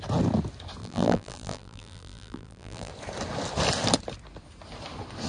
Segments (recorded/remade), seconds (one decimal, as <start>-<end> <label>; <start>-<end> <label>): 0.0-0.8 recorded; 0.8-2.9 remade; 2.9-5.3 recorded

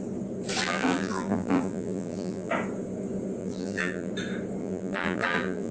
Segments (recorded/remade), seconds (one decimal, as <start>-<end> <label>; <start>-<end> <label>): 0.0-0.6 recorded; 0.6-2.5 remade; 2.5-3.4 recorded; 3.4-4.1 remade; 4.1-4.6 recorded; 4.6-5.7 remade

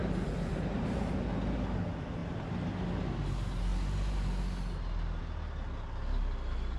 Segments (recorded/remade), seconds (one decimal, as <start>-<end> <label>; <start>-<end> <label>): 0.0-1.1 remade; 1.1-6.8 recorded

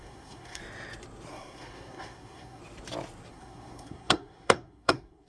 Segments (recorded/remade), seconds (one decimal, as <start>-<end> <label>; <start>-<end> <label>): 0.0-0.6 remade; 0.6-1.3 recorded; 1.3-2.6 remade; 2.6-3.3 recorded; 3.3-5.3 remade

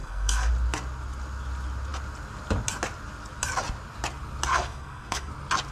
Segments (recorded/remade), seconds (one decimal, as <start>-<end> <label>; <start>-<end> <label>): 0.0-0.5 remade; 0.5-4.5 recorded; 4.5-5.3 remade; 5.3-5.7 recorded

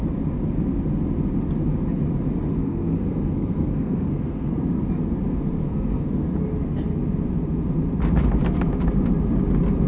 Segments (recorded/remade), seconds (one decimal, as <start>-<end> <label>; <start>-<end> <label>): 0.0-2.5 recorded; 2.5-4.6 remade; 4.6-5.6 recorded; 5.6-6.3 remade; 6.3-9.9 recorded

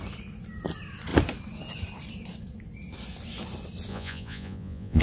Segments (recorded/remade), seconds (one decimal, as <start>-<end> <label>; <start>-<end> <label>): 0.0-3.9 recorded; 3.9-5.0 remade

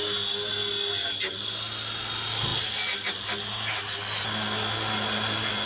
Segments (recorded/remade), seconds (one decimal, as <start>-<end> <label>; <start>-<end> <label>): 0.0-5.7 recorded